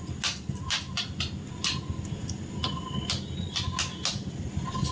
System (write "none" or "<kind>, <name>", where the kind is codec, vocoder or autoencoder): none